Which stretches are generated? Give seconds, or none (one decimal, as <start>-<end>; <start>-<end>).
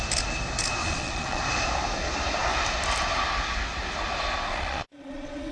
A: 0.8-1.4; 4.5-5.5